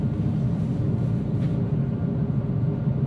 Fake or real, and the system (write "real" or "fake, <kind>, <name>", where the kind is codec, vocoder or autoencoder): real